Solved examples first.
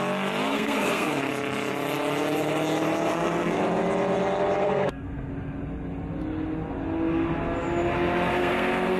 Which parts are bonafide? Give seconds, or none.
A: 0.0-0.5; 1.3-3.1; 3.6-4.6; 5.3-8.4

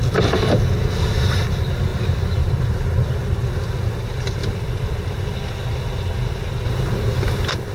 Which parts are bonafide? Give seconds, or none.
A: 0.0-1.9; 2.6-4.4; 5.5-7.7

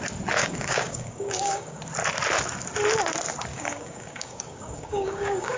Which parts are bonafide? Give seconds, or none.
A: 0.0-0.4; 1.8-3.5

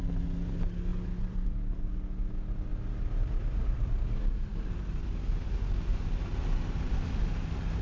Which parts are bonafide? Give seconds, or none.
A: 0.0-0.9; 1.9-2.7; 3.9-5.9; 7.2-7.8